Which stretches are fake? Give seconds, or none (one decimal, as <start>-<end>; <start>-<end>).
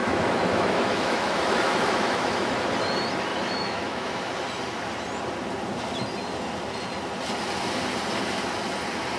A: 0.0-2.6; 3.3-4.3